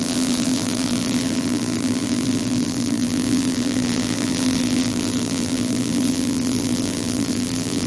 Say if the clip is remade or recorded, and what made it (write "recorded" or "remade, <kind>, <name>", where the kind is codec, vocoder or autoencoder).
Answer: remade, vocoder, BigVGAN v2